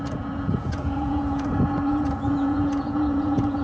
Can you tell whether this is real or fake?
fake